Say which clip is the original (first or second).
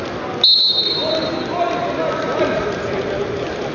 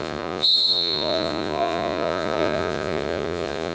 first